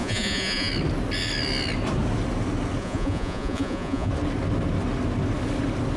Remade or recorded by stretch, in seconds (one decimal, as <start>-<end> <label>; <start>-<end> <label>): 0.0-0.7 remade; 0.7-2.8 recorded; 2.8-4.1 remade; 4.1-6.0 recorded